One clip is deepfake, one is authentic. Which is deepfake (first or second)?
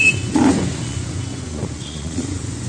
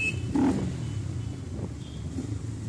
first